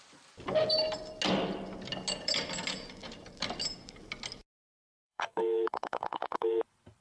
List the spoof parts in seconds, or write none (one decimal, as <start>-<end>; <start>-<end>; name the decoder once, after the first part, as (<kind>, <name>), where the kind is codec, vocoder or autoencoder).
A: 4.6-6.6 (codec, SNAC)